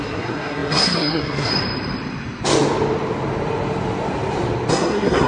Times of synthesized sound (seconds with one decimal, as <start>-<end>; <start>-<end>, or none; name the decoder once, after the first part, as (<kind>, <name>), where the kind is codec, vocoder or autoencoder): 0.0-1.5 (codec, SNAC); 4.7-5.3